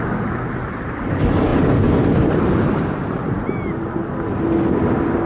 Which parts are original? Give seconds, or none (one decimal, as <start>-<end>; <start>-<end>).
0.0-5.3